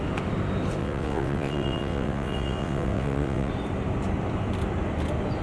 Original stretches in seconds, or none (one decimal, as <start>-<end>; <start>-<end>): 0.0-0.8; 3.5-5.4